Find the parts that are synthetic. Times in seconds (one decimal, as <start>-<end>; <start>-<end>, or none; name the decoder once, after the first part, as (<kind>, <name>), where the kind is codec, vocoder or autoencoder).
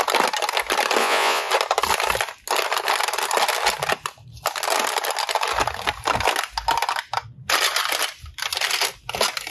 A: 1.0-1.5 (vocoder, Vocos)